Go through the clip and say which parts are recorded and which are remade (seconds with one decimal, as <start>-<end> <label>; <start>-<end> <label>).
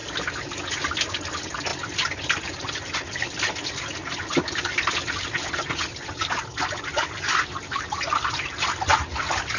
0.0-9.6 recorded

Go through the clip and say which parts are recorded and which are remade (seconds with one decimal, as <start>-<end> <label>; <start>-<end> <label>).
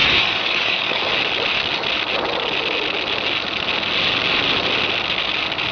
0.0-1.1 remade; 1.1-5.7 recorded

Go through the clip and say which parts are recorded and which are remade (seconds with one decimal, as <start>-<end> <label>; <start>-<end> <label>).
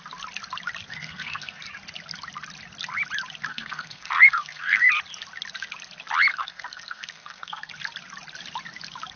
0.0-0.9 recorded; 0.9-1.6 remade; 1.6-3.5 recorded; 3.5-4.9 remade; 4.9-6.3 recorded; 6.3-7.7 remade; 7.7-9.2 recorded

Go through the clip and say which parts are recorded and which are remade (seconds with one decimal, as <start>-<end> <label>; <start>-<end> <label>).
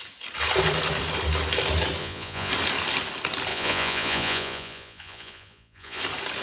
0.0-2.0 recorded; 2.0-2.5 remade; 2.5-3.5 recorded; 3.5-6.0 remade; 6.0-6.4 recorded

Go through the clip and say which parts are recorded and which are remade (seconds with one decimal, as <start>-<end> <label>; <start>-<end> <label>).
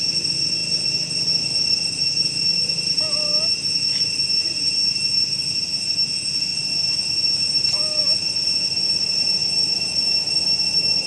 0.0-11.1 recorded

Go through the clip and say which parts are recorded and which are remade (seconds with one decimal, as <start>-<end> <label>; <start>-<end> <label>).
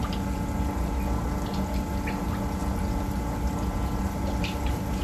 0.0-5.0 recorded